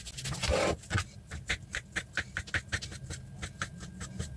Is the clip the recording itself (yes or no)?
yes